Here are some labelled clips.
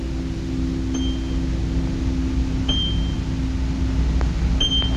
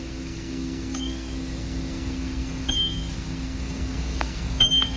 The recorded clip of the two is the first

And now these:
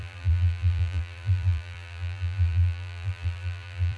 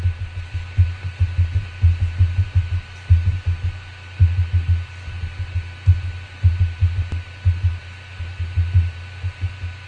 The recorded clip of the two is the second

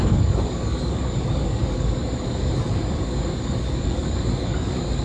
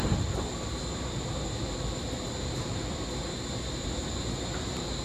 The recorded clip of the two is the second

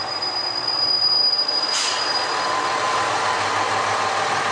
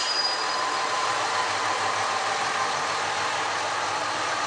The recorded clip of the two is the first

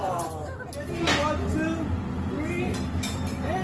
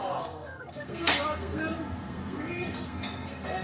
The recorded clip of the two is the first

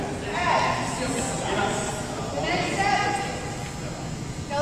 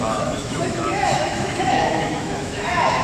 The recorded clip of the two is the first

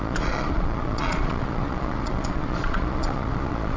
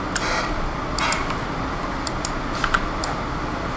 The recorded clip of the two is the second